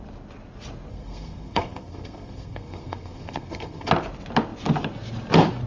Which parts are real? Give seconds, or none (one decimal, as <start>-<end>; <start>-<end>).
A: 0.0-0.9; 3.9-5.7